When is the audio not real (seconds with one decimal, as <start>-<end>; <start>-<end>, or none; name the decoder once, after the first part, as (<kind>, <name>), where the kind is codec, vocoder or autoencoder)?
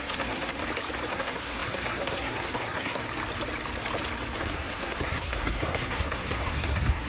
0.0-0.6 (codec, SNAC); 1.1-3.0; 4.4-7.1